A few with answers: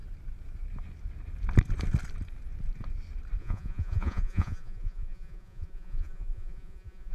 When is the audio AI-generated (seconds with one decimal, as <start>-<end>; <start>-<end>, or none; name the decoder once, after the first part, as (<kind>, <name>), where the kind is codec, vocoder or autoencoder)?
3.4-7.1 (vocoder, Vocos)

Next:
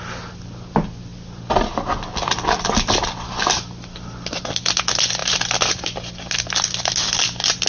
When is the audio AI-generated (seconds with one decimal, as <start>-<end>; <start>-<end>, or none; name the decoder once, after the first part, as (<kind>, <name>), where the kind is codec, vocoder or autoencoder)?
none

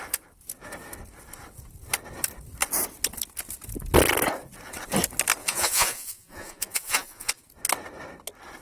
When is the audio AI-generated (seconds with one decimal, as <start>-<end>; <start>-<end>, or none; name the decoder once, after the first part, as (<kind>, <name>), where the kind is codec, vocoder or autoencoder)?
5.4-7.5 (vocoder, Vocos)